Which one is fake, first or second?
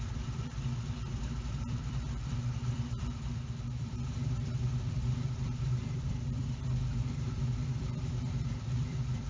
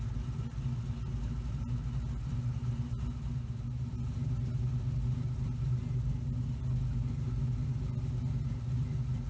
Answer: first